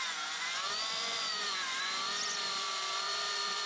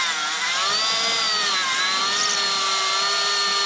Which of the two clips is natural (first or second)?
second